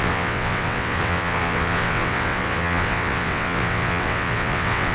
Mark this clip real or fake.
fake